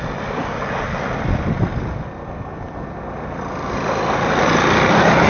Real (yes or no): yes